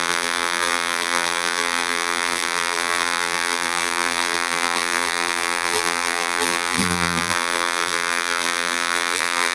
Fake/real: fake